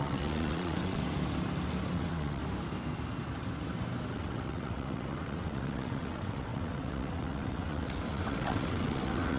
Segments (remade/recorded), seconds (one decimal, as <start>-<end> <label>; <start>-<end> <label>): 0.0-1.0 remade; 1.0-1.9 recorded; 1.9-2.4 remade; 2.4-4.1 recorded; 4.1-9.4 remade